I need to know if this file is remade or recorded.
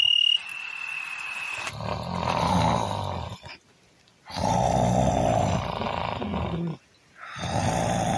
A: recorded